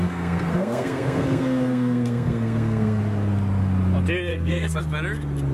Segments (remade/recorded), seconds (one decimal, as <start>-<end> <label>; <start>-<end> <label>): 0.0-3.0 remade; 3.0-4.3 recorded; 4.3-4.8 remade; 4.8-5.5 recorded